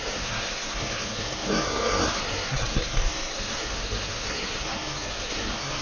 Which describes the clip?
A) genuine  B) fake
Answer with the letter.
B